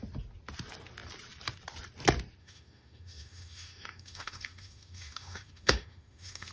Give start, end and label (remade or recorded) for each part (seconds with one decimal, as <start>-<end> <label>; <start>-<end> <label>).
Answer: 0.0-2.4 recorded; 2.4-6.5 remade